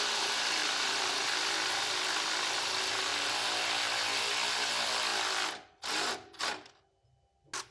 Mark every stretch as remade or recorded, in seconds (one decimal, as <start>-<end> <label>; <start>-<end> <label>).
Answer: 0.0-0.6 recorded; 0.6-1.8 remade; 1.8-3.1 recorded; 3.1-4.2 remade; 4.2-5.1 recorded; 5.1-6.4 remade; 6.4-7.7 recorded